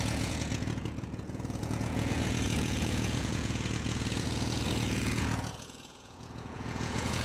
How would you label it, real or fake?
fake